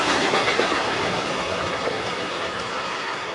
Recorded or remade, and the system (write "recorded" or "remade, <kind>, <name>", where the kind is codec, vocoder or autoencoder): remade, codec, SNAC